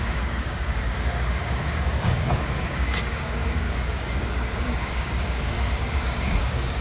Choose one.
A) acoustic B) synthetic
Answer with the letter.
B